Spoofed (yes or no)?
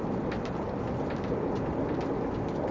no